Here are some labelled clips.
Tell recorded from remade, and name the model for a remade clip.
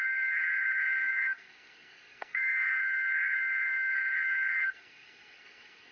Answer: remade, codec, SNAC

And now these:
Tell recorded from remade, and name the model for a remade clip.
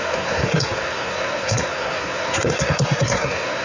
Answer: remade, codec, SNAC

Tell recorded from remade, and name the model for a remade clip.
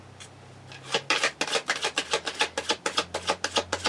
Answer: recorded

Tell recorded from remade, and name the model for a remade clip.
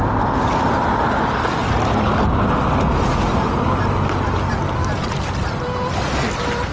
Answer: recorded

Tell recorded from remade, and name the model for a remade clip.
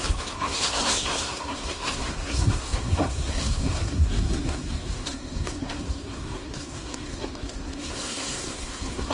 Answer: remade, codec, SNAC